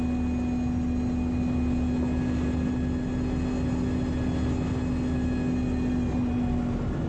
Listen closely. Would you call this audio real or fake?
real